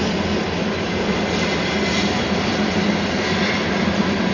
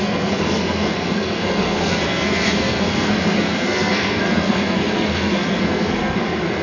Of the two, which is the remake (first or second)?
second